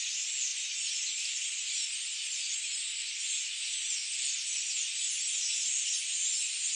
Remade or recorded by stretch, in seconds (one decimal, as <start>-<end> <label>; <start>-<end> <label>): 0.0-6.8 recorded